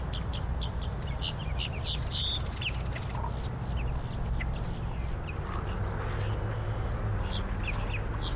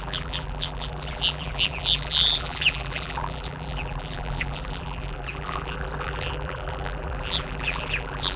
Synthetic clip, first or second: second